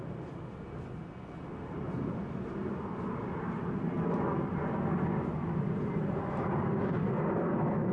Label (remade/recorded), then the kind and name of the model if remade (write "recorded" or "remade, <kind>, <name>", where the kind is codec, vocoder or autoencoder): recorded